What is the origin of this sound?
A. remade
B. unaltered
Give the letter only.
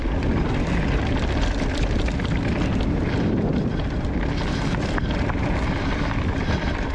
B